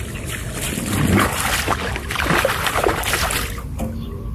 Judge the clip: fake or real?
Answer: real